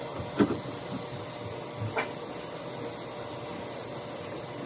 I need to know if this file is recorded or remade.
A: recorded